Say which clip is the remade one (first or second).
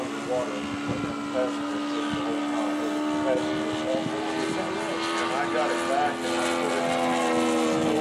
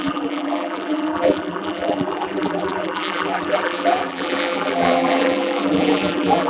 second